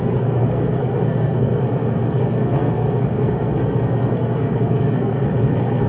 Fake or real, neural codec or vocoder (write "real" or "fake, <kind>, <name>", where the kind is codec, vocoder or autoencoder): fake, codec, SNAC